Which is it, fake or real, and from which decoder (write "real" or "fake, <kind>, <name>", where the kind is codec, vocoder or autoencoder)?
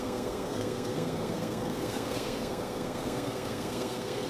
fake, codec, SNAC